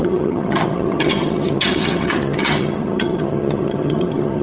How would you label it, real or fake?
fake